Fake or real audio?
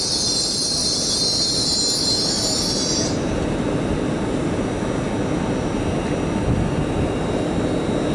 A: real